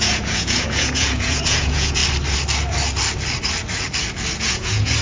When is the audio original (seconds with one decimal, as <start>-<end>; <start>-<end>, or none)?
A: 2.0-4.4